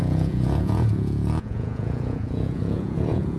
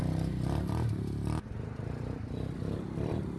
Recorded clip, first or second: second